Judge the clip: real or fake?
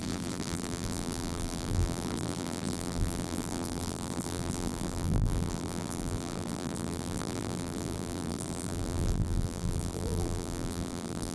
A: fake